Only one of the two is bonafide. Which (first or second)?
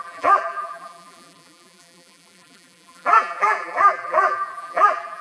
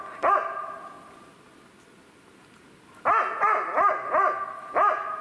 second